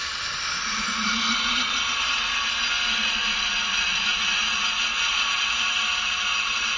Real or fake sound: real